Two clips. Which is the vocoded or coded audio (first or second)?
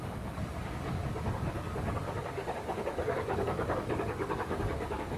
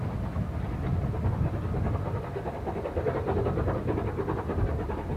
first